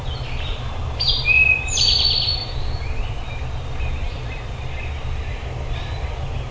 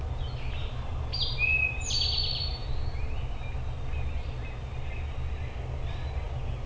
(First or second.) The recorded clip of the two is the second